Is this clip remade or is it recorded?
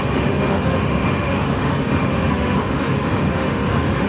remade